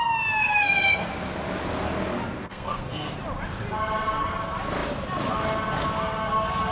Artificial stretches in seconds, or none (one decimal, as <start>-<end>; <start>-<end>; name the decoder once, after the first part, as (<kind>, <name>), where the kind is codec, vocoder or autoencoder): 0.4-1.1 (codec, SNAC); 2.4-3.1